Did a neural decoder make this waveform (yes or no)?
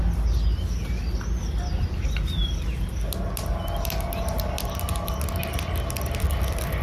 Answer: no